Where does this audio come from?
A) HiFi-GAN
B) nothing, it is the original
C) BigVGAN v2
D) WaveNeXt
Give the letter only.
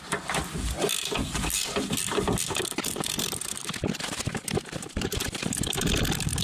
C